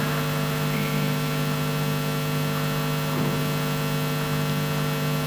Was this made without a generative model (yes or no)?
yes